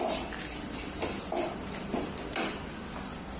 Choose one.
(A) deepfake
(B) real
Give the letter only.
B